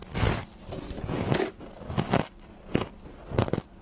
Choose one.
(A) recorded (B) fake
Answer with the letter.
A